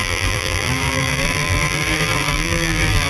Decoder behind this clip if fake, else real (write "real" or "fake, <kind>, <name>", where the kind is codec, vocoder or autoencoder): fake, vocoder, BigVGAN v2